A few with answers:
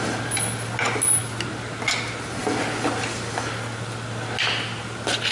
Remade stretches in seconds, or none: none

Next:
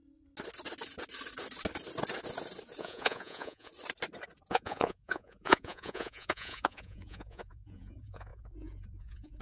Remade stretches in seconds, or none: 2.8-3.7 (vocoder, Vocos); 4.5-9.4

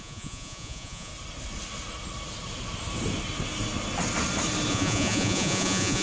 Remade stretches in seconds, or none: 0.0-1.1 (vocoder, Vocos); 4.7-6.0